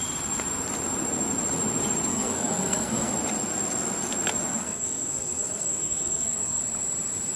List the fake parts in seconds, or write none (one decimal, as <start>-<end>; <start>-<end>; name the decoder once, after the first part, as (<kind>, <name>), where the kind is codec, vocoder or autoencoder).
2.1-3.1 (codec, SNAC); 4.5-6.6